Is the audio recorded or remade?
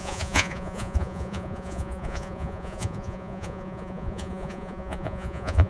remade